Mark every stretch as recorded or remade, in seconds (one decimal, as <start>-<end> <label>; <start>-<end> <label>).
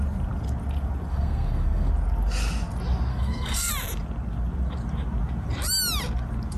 0.0-1.1 recorded; 1.1-1.9 remade; 1.9-3.1 recorded; 3.1-3.7 remade; 3.7-6.6 recorded